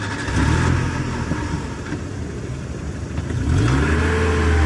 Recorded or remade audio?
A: recorded